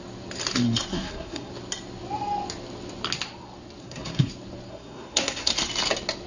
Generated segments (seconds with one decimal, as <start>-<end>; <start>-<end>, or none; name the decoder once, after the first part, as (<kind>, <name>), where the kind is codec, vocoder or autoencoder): 0.9-1.5 (codec, SNAC); 3.8-4.3; 4.7-5.5